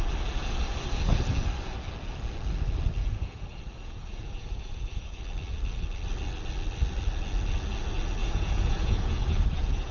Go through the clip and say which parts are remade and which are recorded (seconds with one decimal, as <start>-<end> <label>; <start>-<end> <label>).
0.0-3.0 recorded; 3.0-5.2 remade; 5.2-8.2 recorded; 8.2-9.9 remade